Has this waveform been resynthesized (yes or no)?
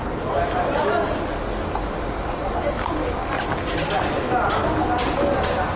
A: no